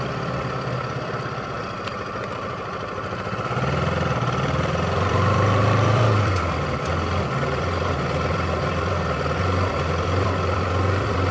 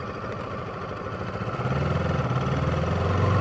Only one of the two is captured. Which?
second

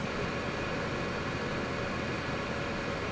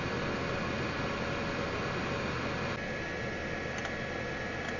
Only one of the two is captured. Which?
second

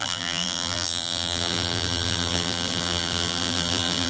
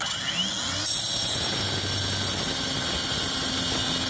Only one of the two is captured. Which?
second